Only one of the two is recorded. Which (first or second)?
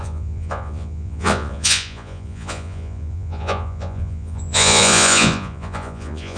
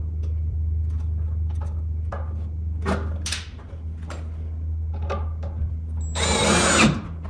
second